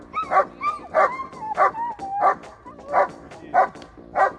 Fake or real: real